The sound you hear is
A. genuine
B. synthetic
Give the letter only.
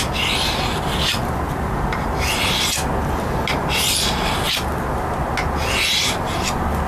A